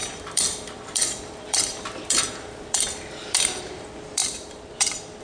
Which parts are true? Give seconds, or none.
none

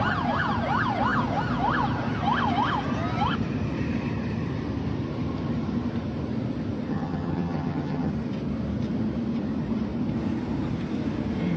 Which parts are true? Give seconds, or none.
0.0-6.9; 8.1-11.6

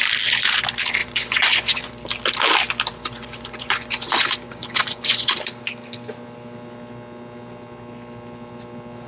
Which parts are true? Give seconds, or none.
0.0-1.0; 1.9-2.9; 5.3-9.1

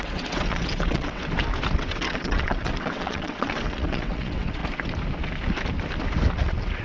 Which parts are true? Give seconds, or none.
1.2-1.8; 4.6-6.3

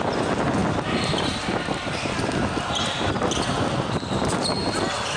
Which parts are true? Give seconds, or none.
0.0-5.2